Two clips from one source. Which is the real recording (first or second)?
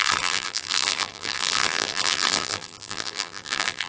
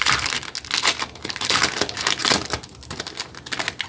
second